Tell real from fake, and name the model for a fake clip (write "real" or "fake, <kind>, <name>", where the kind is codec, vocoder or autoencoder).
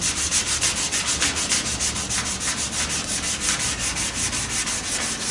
real